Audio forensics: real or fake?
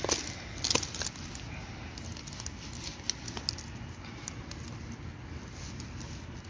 real